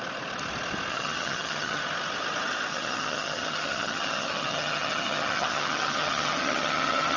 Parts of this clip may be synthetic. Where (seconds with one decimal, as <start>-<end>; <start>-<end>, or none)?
0.9-1.8; 2.7-7.2